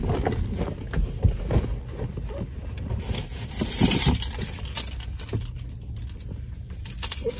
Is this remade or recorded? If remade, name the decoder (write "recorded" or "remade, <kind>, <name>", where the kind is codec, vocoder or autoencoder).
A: recorded